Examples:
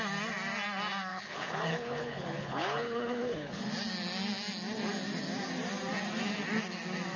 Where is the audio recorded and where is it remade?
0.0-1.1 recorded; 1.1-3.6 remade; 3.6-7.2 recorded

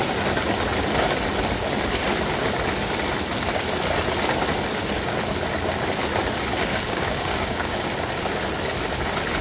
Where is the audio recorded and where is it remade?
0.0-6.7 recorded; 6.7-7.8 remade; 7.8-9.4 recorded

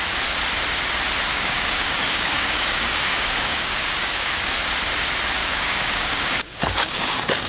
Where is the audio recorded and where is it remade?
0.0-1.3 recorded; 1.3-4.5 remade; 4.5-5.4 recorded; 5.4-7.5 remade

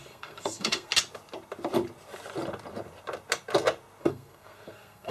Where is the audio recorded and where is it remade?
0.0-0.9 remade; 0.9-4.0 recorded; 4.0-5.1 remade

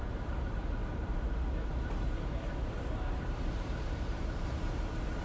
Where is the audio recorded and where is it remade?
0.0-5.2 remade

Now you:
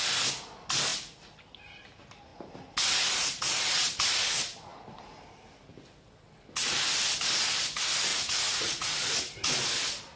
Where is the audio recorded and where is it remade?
0.0-8.1 recorded; 8.1-9.1 remade; 9.1-10.2 recorded